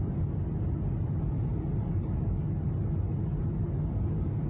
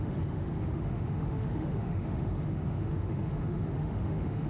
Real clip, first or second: first